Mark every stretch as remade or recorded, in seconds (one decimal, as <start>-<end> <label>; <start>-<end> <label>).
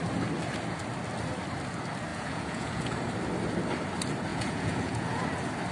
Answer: 0.0-2.1 recorded; 2.1-3.1 remade; 3.1-4.3 recorded; 4.3-5.2 remade; 5.2-5.7 recorded